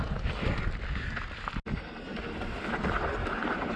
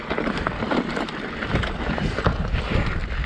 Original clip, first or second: first